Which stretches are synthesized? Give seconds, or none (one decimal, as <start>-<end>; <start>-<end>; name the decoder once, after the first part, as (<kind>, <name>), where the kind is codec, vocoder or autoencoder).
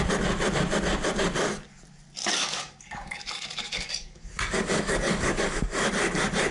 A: 2.2-5.9 (codec, DAC)